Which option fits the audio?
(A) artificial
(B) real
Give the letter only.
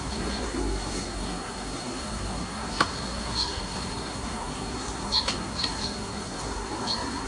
A